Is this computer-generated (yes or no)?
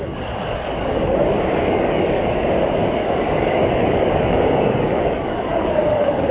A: yes